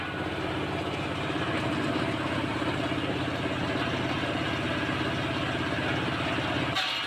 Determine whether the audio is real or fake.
real